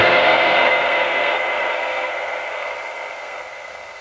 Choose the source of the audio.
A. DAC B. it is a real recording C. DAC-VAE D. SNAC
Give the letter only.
D